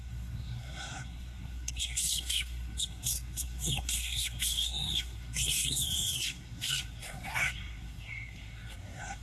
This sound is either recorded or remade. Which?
remade